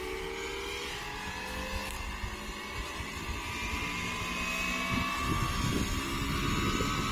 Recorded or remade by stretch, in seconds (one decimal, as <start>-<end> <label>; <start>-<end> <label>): 0.0-7.1 recorded